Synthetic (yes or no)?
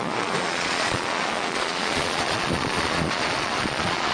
yes